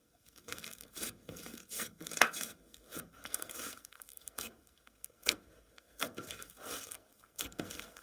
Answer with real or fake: fake